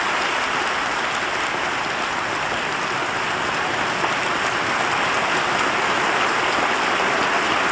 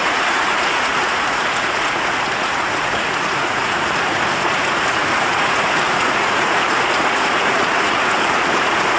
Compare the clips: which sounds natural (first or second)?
first